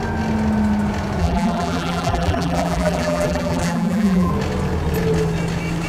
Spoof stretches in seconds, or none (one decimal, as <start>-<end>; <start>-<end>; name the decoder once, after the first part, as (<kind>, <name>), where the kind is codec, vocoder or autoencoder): 1.2-4.3 (vocoder, BigVGAN v2)